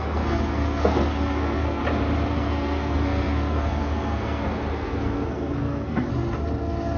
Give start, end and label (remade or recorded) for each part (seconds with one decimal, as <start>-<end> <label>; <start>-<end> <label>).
0.0-1.8 remade; 1.8-2.3 recorded; 2.3-6.1 remade; 6.1-7.0 recorded